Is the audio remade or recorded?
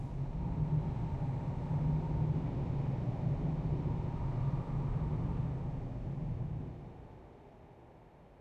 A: recorded